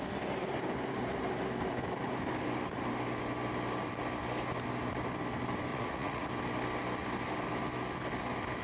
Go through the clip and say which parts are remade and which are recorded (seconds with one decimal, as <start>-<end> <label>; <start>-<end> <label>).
0.0-5.7 recorded; 5.7-6.3 remade; 6.3-8.6 recorded